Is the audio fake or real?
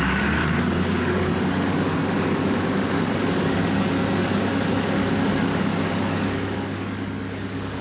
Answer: fake